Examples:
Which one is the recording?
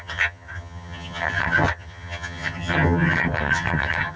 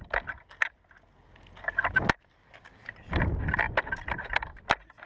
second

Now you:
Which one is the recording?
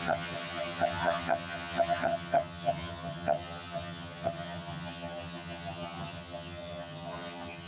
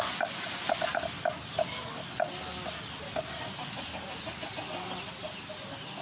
second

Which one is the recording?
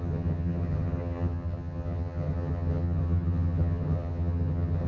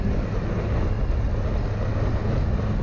second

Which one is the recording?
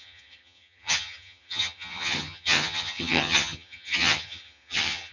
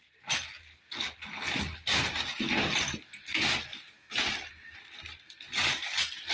second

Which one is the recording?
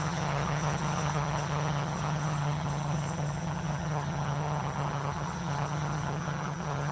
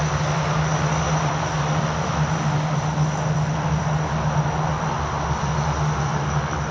second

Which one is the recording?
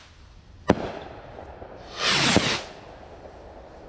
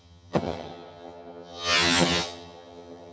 first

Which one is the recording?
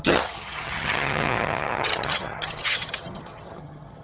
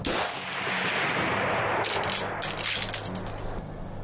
second